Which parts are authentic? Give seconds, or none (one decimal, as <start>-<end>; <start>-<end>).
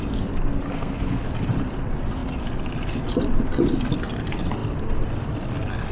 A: 0.0-0.7; 1.3-5.9